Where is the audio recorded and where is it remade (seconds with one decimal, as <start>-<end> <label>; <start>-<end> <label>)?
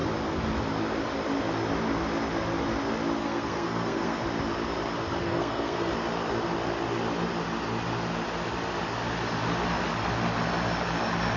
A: 0.0-3.2 recorded; 3.2-4.2 remade; 4.2-5.2 recorded; 5.2-5.9 remade; 5.9-11.4 recorded